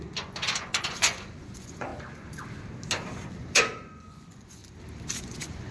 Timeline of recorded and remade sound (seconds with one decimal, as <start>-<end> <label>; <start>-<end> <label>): 0.0-1.9 remade; 1.9-3.3 recorded; 3.3-4.6 remade; 4.6-5.2 recorded; 5.2-5.7 remade